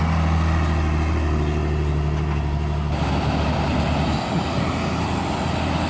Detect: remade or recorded recorded